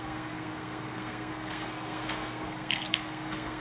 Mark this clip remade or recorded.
remade